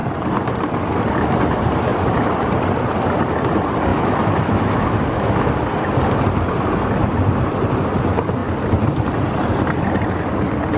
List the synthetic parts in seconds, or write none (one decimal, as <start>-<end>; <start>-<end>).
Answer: 3.9-5.5